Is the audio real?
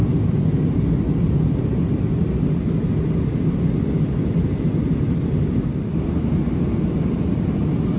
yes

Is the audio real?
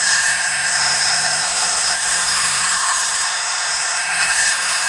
no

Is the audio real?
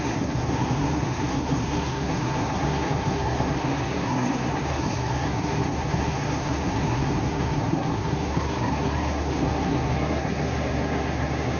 no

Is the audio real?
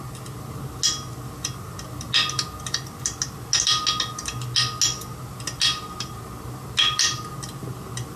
yes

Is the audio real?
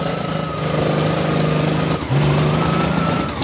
yes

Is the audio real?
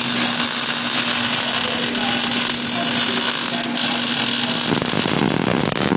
yes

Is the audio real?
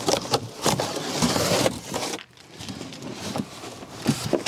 yes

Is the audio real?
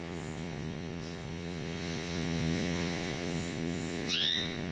no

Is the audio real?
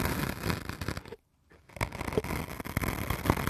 yes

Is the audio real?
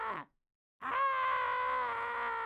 yes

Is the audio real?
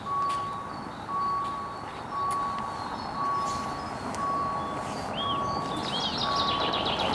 yes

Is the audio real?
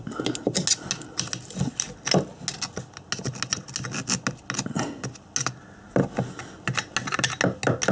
yes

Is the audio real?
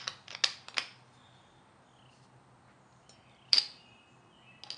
yes